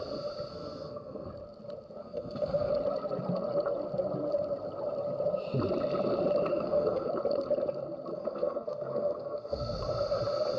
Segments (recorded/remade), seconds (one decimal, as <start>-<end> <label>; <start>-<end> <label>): 0.0-0.5 recorded; 0.5-1.3 remade; 1.3-2.0 recorded; 2.0-2.7 remade; 2.7-6.5 recorded; 6.5-7.1 remade; 7.1-8.1 recorded; 8.1-9.8 remade; 9.8-10.6 recorded